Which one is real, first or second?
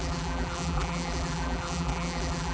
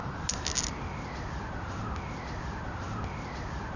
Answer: second